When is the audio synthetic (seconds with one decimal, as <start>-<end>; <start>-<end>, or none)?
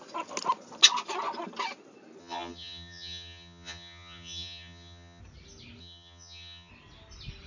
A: 2.2-5.2; 5.8-6.7